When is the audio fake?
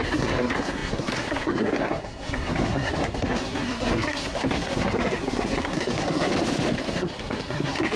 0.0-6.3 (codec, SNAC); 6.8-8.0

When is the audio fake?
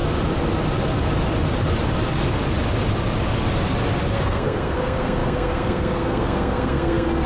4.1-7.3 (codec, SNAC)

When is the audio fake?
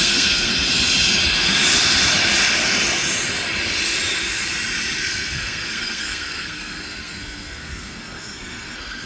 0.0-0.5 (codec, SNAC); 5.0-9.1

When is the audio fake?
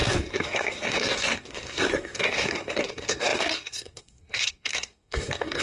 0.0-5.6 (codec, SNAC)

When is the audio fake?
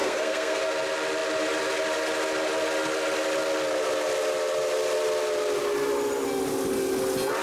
0.0-0.6 (codec, SNAC)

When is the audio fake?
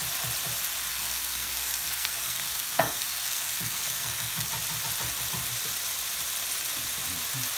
0.9-4.5 (codec, SNAC)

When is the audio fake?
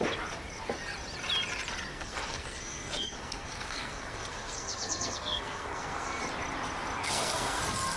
1.9-6.2 (codec, SNAC); 7.0-7.6